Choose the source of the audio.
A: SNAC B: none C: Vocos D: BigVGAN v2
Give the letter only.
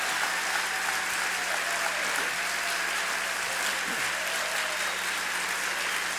B